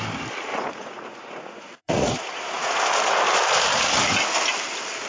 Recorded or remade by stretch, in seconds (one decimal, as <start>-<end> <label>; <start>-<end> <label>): 0.0-0.5 recorded; 0.5-2.8 remade; 2.8-5.1 recorded